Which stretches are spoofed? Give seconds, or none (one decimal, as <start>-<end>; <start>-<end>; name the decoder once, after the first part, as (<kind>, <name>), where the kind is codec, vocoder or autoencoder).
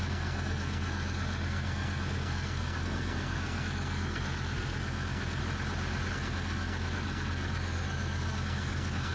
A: 0.0-5.4 (codec, SNAC); 6.1-9.1